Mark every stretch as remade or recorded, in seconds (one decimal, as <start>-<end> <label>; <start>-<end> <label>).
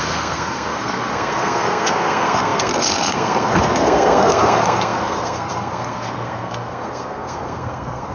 0.0-8.1 remade